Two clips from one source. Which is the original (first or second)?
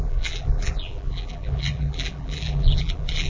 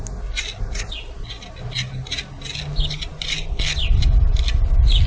second